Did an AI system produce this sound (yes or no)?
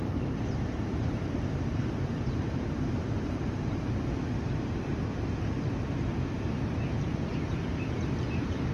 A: yes